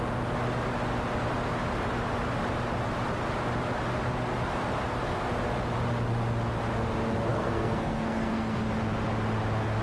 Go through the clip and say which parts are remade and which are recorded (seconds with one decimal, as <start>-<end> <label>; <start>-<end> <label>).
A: 0.0-7.3 recorded; 7.3-8.7 remade; 8.7-9.8 recorded